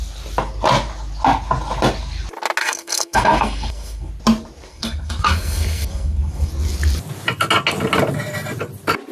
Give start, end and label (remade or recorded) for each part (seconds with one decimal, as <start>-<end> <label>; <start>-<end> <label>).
0.0-2.6 recorded; 2.6-4.1 remade; 4.1-4.7 recorded; 4.7-6.5 remade; 6.5-9.1 recorded